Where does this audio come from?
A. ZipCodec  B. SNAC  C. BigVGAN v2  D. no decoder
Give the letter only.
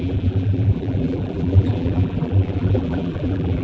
C